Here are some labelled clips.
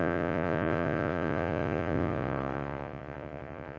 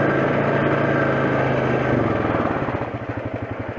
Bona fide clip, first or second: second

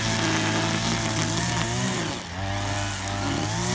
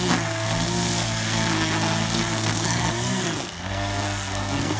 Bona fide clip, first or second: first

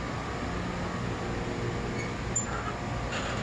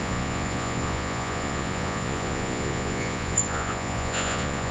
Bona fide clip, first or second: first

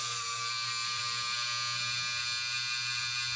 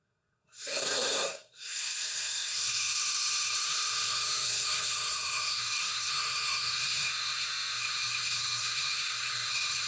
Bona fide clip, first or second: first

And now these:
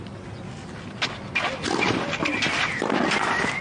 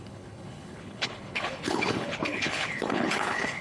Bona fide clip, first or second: first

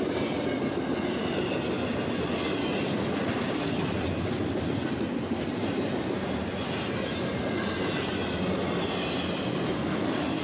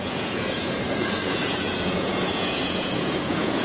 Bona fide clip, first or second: first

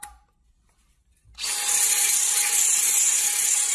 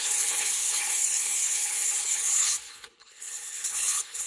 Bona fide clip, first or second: first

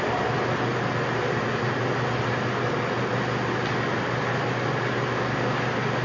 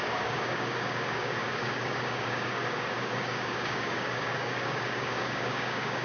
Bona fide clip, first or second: first